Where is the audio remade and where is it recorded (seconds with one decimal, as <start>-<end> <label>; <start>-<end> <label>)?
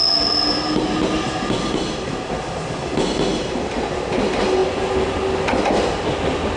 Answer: 0.0-6.6 recorded